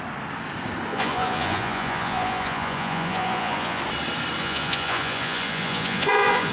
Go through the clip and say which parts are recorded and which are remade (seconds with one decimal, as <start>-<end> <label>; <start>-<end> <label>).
0.0-0.9 recorded; 0.9-3.8 remade; 3.8-4.4 recorded; 4.4-6.5 remade